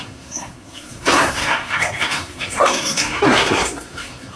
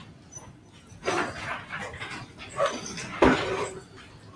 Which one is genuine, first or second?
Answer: second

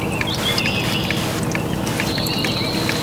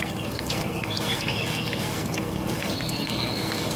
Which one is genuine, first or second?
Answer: first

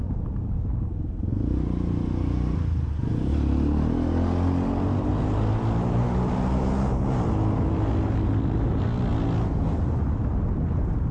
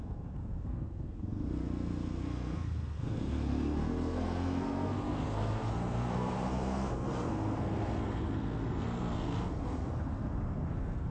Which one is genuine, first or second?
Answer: first